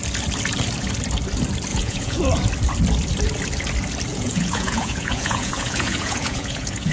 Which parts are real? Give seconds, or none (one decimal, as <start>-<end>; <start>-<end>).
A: 0.0-1.7; 2.2-4.1